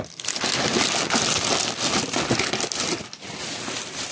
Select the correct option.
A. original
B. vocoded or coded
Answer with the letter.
B